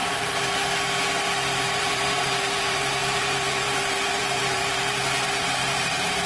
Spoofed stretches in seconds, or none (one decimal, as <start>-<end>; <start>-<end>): 1.5-6.3